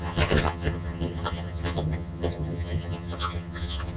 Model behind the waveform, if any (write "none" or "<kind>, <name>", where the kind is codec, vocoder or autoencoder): vocoder, HiFi-GAN